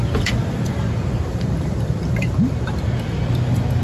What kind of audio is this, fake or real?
fake